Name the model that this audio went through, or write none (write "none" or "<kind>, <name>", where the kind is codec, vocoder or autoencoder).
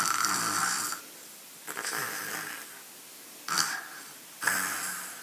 none